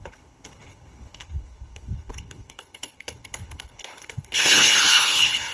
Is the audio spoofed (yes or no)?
yes